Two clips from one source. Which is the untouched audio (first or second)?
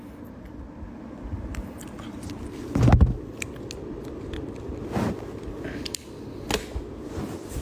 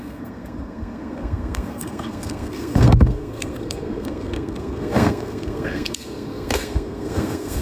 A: first